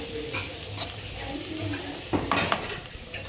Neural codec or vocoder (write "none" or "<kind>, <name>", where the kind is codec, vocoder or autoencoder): none